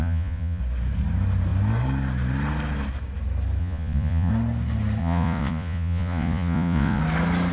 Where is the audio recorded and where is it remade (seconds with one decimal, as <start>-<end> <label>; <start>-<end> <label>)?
0.0-0.6 remade; 0.6-3.6 recorded; 3.6-4.3 remade; 4.3-5.0 recorded; 5.0-7.0 remade; 7.0-7.5 recorded